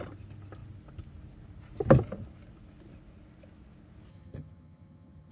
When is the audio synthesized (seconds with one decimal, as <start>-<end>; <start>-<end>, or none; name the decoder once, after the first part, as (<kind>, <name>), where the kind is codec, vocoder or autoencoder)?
4.1-5.3 (vocoder, HiFi-GAN)